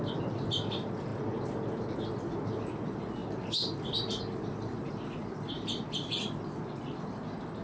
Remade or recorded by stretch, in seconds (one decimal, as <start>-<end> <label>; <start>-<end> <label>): 0.0-7.6 recorded